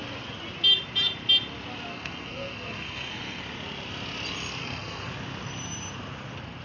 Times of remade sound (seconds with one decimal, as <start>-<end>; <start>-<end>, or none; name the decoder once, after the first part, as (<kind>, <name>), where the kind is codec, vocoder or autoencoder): 1.9-3.4 (codec, SNAC); 4.6-5.1